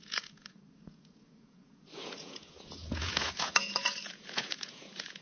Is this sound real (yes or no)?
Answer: no